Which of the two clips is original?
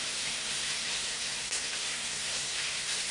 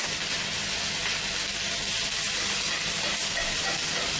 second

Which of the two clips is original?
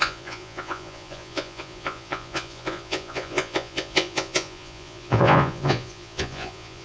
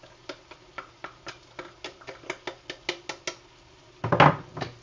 second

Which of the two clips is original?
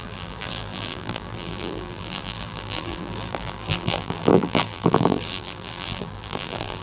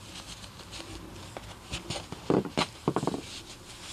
second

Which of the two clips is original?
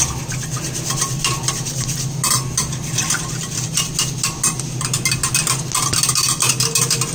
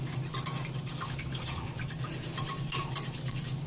first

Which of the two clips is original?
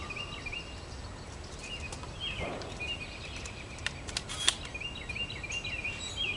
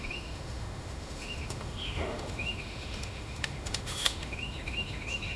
first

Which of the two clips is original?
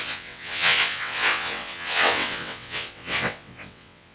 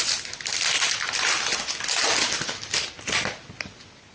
second